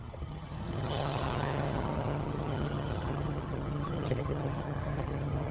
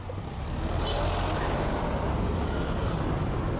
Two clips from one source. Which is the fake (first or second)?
first